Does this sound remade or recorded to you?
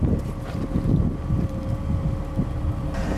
recorded